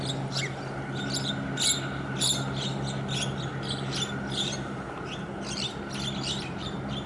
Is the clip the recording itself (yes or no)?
yes